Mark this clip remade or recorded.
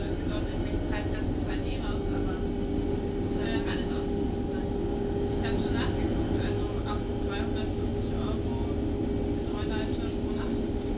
recorded